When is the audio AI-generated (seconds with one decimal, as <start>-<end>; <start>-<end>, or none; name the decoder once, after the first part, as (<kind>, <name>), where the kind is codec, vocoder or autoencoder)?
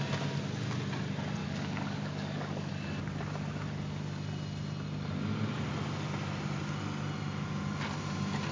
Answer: 1.4-2.7 (codec, DAC)